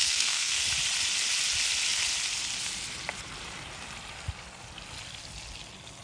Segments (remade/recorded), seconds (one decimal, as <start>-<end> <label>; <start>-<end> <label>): 0.0-0.6 remade; 0.6-6.0 recorded